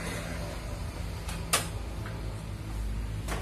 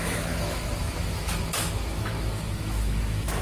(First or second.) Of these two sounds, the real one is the first